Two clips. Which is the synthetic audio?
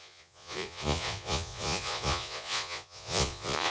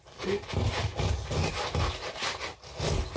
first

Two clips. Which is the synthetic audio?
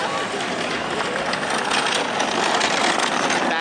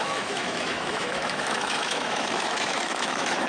second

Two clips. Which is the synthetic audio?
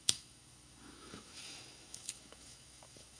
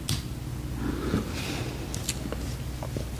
first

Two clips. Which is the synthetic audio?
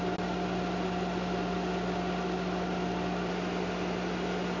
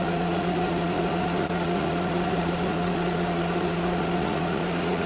second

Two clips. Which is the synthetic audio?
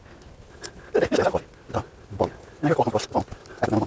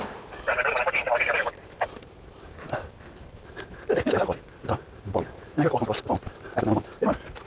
second